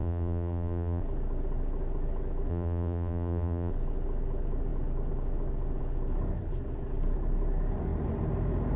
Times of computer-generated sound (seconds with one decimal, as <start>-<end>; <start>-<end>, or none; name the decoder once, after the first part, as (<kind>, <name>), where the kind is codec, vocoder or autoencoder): 0.0-1.0 (vocoder, BigVGAN v2); 2.5-3.7